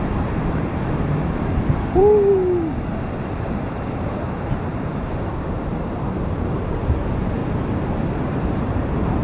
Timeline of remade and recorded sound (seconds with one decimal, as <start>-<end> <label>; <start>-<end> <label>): 0.0-2.0 remade; 2.0-3.4 recorded; 3.4-7.4 remade; 7.4-8.2 recorded; 8.2-9.2 remade